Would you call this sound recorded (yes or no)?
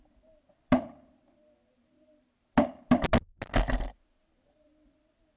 yes